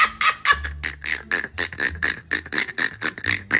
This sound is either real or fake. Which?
real